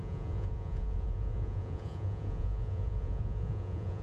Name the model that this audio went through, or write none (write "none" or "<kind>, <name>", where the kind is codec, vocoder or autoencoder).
vocoder, Vocos